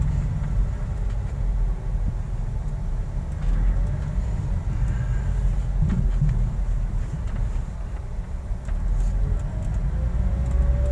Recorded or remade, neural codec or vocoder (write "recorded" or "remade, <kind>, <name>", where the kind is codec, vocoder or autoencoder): recorded